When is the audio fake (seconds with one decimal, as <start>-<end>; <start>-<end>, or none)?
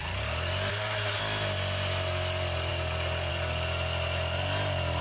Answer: 0.7-1.2